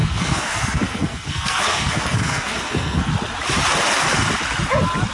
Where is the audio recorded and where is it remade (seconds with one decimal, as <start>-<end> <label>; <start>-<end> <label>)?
0.0-3.1 remade; 3.1-5.1 recorded